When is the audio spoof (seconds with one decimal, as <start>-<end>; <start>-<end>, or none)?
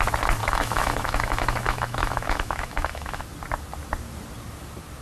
0.4-3.2